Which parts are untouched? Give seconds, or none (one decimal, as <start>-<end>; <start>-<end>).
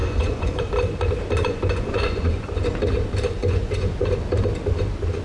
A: 0.6-1.4; 2.7-3.4; 4.1-5.2